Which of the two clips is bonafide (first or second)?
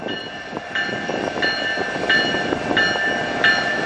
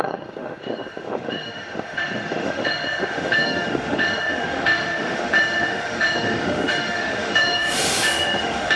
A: first